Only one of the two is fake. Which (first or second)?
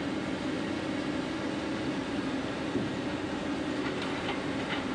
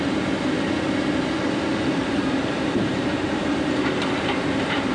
second